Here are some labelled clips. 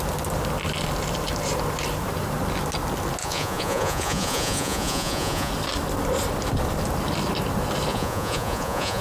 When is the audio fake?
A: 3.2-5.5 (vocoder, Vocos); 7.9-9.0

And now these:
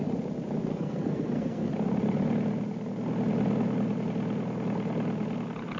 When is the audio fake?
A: 0.7-1.7 (codec, SNAC)

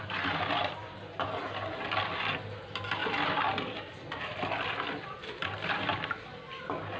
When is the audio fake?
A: none

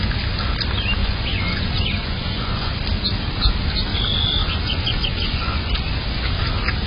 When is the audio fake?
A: 1.0-2.7 (vocoder, Vocos); 4.4-5.9

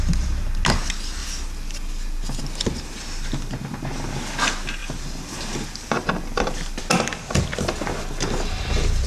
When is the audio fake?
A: 1.2-2.4 (vocoder, BigVGAN v2); 4.8-6.8